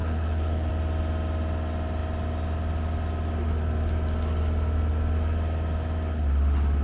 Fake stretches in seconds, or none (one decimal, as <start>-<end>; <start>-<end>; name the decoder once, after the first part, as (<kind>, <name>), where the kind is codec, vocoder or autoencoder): 0.0-0.7 (codec, HILCodec)